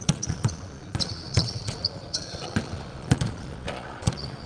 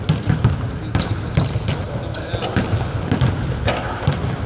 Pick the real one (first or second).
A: second